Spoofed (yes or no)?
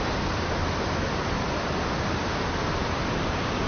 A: no